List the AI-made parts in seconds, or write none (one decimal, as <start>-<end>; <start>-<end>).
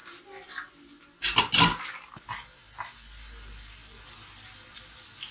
none